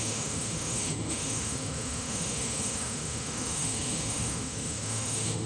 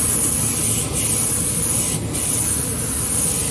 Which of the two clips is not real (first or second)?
first